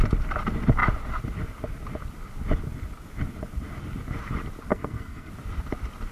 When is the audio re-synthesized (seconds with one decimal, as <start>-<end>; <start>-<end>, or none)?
4.7-5.3